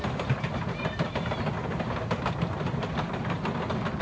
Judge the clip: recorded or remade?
recorded